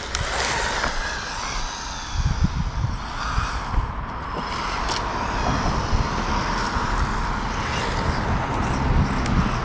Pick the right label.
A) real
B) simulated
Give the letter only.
A